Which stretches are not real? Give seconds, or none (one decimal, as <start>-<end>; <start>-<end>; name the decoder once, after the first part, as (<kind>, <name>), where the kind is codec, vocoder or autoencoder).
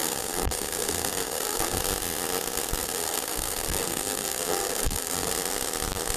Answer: 0.0-1.8 (codec, SNAC); 2.8-5.3